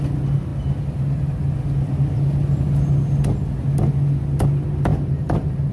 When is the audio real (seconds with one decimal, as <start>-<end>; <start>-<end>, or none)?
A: 0.0-4.9